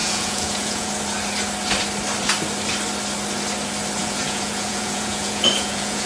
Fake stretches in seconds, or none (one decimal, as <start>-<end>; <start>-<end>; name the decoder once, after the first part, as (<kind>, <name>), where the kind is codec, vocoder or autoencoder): 0.0-1.0 (vocoder, Vocos); 4.0-6.1